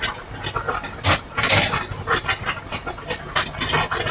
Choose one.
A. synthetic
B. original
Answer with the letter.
B